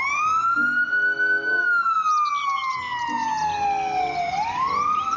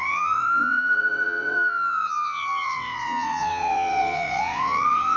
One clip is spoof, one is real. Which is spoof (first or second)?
second